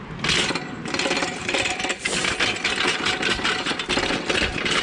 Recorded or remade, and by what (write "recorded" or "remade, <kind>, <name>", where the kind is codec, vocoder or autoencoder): recorded